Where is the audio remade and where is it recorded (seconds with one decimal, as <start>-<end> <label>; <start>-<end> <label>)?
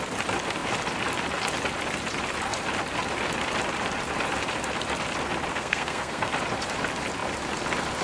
0.0-5.5 recorded; 5.5-6.3 remade; 6.3-8.0 recorded